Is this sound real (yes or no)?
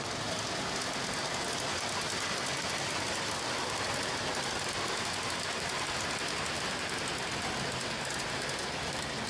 yes